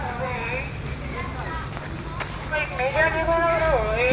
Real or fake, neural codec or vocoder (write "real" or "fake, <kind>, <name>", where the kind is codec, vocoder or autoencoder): real